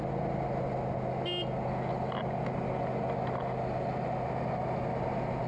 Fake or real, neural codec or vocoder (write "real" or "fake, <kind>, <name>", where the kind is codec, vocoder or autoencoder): real